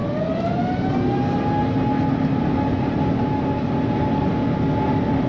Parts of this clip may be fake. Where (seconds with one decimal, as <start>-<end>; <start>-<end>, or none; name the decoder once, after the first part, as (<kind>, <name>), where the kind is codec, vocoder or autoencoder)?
none